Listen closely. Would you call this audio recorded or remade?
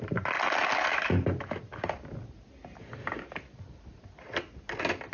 recorded